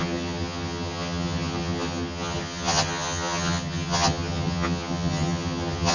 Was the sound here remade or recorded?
remade